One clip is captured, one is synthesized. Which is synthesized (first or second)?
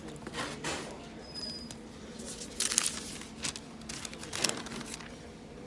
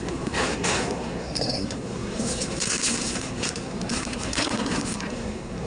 second